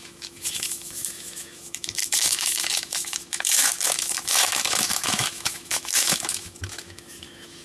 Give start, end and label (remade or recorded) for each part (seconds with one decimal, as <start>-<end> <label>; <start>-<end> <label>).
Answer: 0.0-7.6 remade